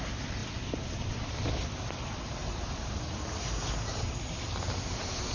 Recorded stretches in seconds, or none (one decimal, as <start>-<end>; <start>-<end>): 0.0-2.4; 3.2-5.3